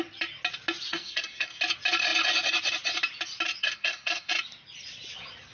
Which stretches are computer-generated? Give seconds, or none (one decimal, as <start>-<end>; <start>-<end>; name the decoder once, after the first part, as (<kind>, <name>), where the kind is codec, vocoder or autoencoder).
0.9-1.6 (codec, SNAC); 3.6-4.3